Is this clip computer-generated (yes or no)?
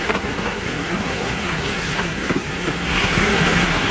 yes